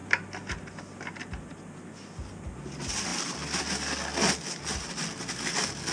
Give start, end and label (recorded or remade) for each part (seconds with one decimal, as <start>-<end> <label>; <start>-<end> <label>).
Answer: 0.0-5.9 recorded